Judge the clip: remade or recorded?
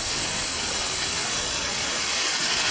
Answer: remade